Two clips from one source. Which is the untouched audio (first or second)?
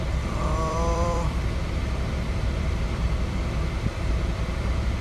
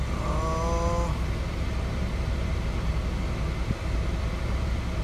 second